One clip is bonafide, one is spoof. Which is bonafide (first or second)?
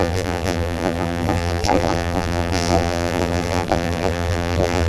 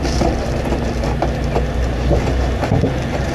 second